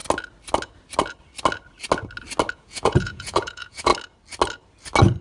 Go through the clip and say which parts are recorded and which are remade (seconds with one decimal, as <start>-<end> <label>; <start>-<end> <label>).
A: 0.0-2.5 recorded; 2.5-3.9 remade; 3.9-5.2 recorded